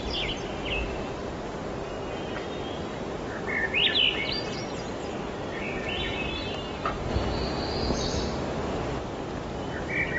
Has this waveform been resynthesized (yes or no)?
no